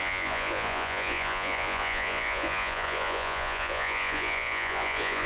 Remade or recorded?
remade